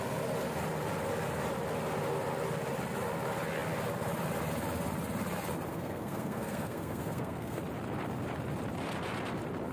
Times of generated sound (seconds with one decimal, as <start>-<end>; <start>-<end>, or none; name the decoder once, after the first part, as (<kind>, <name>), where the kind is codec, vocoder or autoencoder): 5.7-7.6 (codec, SNAC)